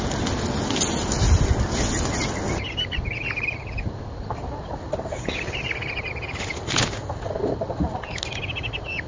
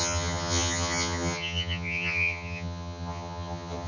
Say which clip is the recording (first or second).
first